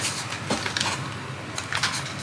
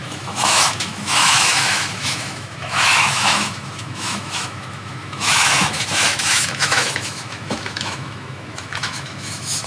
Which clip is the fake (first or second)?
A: second